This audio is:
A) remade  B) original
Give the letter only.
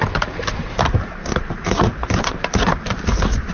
A